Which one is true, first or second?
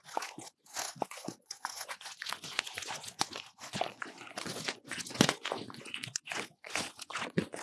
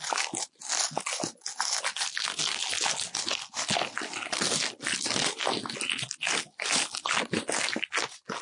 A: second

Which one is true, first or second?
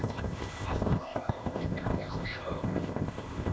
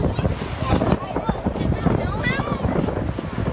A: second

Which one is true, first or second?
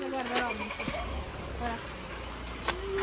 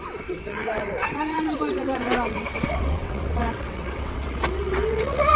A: first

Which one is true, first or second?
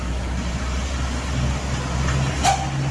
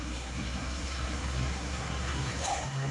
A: first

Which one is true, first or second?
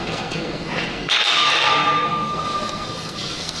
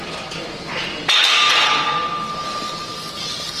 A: second